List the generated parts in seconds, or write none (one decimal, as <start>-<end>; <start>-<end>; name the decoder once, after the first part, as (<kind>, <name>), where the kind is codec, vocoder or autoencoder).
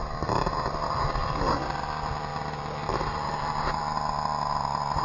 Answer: none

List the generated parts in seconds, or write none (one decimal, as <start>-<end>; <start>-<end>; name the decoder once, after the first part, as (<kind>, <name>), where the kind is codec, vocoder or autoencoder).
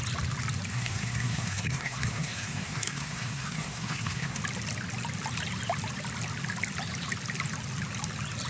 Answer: 0.7-4.4 (codec, SNAC)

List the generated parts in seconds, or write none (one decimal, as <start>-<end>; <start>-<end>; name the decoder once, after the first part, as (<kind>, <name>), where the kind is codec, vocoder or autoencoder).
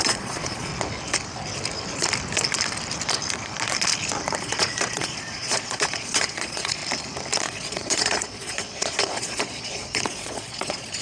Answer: 0.0-0.7 (vocoder, Vocos); 4.4-6.8; 7.4-11.0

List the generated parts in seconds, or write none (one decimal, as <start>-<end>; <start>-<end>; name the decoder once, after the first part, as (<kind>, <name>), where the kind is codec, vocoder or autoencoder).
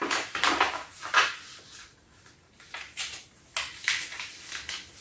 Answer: none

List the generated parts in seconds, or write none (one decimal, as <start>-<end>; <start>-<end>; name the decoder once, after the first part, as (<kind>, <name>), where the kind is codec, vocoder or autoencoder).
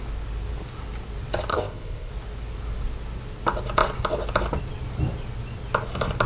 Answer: 1.5-2.1 (codec, ZipCodec)